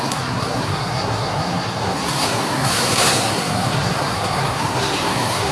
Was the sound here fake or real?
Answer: fake